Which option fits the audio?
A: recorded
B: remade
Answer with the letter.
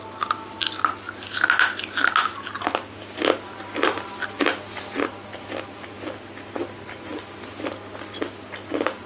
A